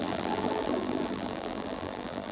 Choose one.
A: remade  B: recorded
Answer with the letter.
A